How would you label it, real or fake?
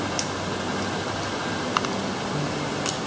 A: real